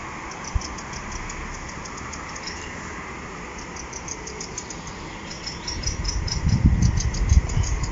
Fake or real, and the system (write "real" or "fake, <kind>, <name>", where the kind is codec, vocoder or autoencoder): real